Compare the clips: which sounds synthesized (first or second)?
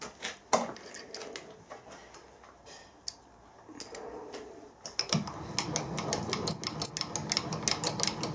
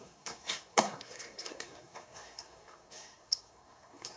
second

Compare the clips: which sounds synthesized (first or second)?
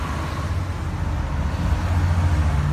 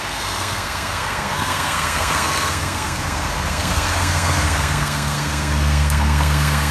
second